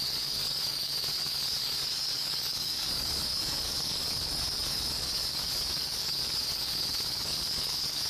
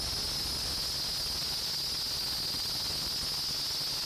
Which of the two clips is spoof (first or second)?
first